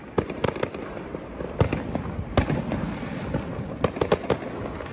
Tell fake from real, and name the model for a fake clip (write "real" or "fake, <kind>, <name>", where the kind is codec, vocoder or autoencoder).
real